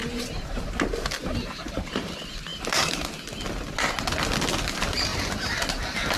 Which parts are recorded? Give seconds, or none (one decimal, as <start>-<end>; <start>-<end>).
2.1-2.5; 3.0-6.2

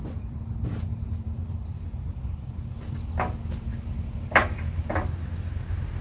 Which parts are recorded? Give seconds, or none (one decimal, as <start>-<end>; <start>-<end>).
1.4-3.7; 4.8-6.0